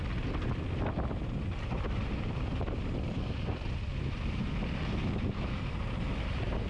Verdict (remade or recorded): recorded